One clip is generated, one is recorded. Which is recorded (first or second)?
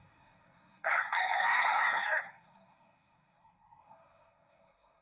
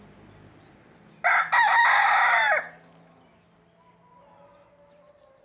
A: second